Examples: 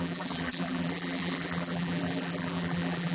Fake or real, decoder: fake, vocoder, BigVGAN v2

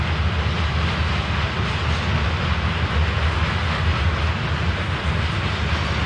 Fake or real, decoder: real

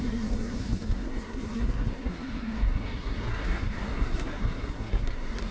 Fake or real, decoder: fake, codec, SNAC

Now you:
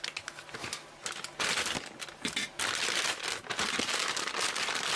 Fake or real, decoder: real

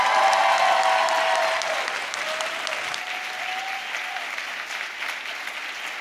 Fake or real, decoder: real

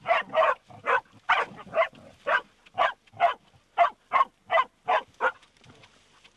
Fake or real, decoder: real